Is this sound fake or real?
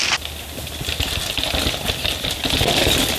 real